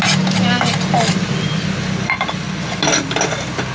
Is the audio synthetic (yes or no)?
no